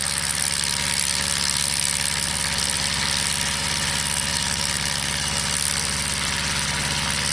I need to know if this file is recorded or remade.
recorded